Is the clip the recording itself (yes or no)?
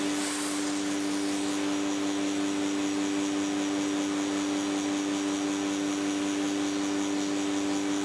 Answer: yes